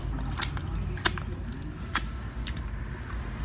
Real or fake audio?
real